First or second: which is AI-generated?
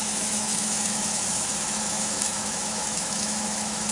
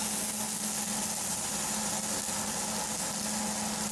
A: first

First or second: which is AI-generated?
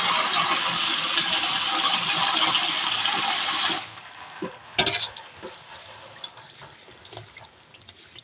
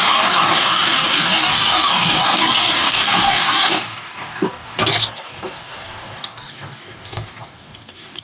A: second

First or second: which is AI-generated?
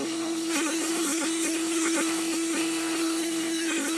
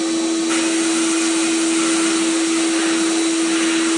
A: first